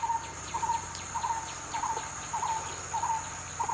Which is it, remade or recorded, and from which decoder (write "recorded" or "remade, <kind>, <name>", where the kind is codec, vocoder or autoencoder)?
recorded